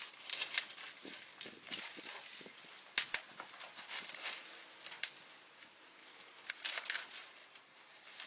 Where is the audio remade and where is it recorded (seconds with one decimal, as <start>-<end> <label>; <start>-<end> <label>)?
0.0-6.0 recorded; 6.0-6.5 remade; 6.5-7.4 recorded; 7.4-8.3 remade